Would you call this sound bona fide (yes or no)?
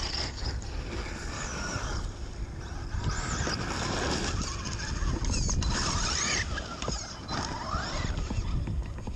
yes